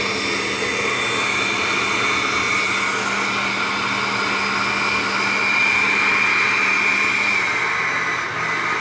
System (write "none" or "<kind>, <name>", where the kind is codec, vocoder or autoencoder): none